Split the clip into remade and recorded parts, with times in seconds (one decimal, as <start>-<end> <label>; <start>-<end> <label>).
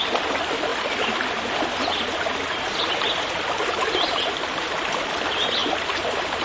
0.0-0.7 recorded; 0.7-1.3 remade; 1.3-6.4 recorded